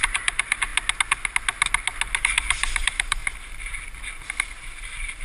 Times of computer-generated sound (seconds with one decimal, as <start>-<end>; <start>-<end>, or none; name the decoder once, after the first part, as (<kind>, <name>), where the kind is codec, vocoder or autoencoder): 0.0-0.7 (vocoder, BigVGAN v2); 2.2-3.2; 4.8-5.2